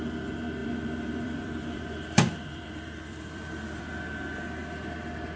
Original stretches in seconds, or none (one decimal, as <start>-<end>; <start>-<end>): 0.0-0.6; 3.8-5.4

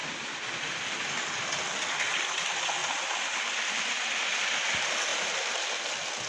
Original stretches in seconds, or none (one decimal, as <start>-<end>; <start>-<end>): 0.0-5.1; 5.8-6.3

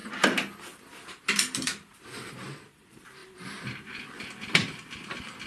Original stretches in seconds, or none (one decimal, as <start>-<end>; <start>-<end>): none

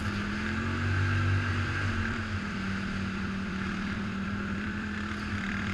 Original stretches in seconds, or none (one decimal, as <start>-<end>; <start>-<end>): 0.0-1.5

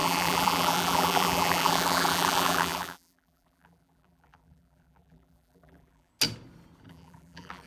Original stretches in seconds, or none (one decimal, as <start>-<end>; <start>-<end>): 6.1-6.9

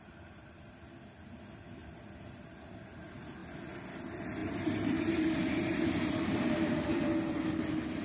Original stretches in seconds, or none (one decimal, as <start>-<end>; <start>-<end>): 0.0-4.4; 7.0-8.0